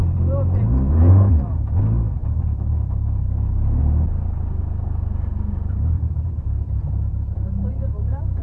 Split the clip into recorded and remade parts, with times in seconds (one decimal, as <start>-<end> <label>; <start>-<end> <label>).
0.0-1.3 remade; 1.3-4.6 recorded; 4.6-6.8 remade; 6.8-8.4 recorded